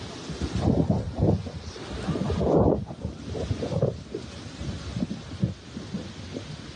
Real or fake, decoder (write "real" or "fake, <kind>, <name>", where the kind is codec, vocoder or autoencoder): real